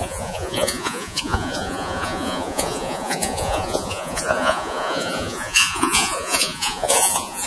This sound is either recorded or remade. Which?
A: remade